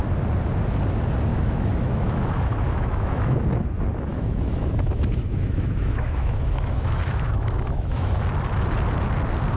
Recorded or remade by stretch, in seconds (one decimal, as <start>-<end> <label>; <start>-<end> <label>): 0.0-1.3 recorded; 1.3-3.4 remade; 3.4-4.1 recorded; 4.1-8.1 remade; 8.1-9.6 recorded